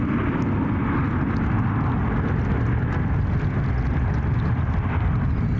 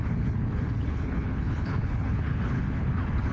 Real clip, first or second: first